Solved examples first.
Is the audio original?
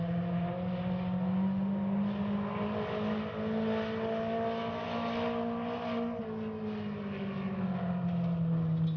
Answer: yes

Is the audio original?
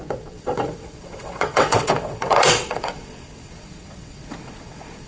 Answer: no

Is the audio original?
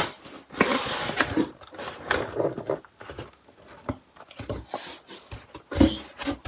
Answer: yes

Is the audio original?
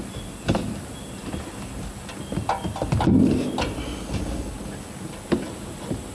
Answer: yes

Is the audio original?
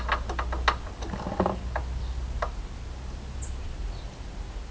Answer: yes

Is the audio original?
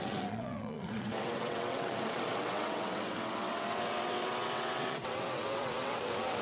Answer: no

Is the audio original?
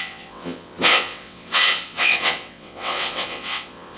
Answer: no